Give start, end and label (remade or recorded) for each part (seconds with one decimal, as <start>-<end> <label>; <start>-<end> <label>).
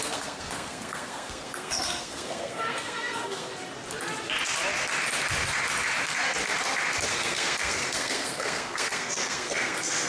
0.0-3.5 remade; 3.5-7.1 recorded; 7.1-10.1 remade